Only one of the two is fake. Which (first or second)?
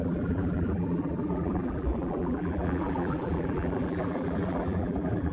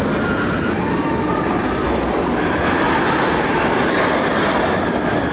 first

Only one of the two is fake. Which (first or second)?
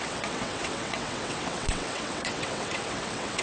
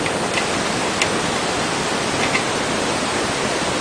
first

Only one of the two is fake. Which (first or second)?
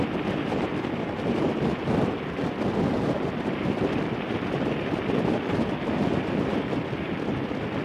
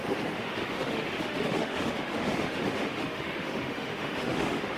second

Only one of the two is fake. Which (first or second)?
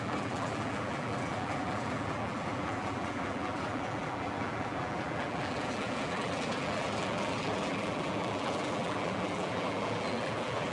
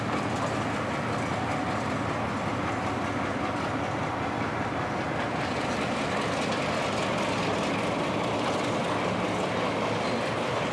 first